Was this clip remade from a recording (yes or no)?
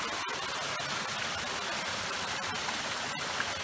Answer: no